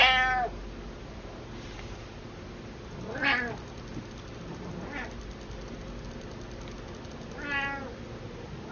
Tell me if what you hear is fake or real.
real